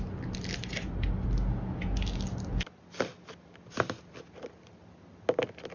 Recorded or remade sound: recorded